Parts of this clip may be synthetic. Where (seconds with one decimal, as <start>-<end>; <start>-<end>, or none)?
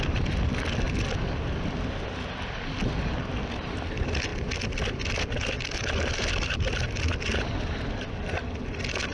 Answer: none